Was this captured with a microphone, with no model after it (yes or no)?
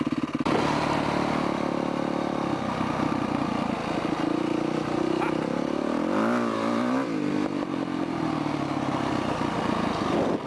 yes